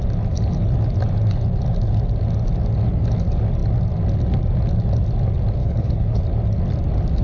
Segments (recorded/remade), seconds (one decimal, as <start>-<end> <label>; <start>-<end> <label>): 0.0-5.6 recorded; 5.6-6.2 remade; 6.2-7.2 recorded